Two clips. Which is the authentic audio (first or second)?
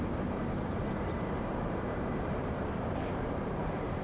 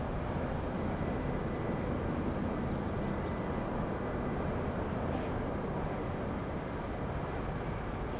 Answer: second